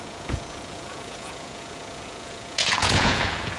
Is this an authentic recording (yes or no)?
no